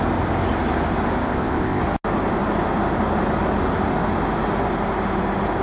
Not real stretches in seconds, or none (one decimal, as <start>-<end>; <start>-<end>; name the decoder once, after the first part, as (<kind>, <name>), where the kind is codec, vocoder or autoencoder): 1.2-1.8 (codec, ZipCodec)